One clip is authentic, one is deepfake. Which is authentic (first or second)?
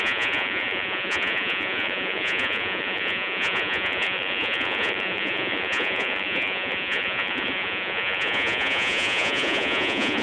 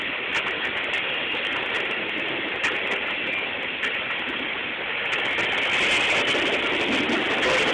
second